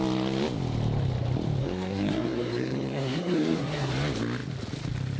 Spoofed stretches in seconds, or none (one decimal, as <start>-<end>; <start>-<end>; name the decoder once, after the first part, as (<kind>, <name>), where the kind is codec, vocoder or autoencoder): 1.6-3.9 (codec, SNAC)